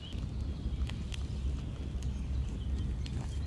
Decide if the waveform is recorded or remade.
recorded